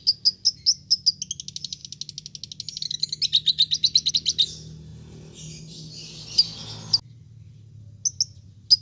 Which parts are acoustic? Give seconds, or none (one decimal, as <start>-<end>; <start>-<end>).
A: 0.0-8.8